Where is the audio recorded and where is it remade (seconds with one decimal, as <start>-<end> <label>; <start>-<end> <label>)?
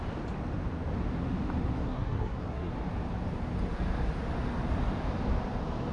0.0-1.8 recorded; 1.8-2.7 remade; 2.7-5.9 recorded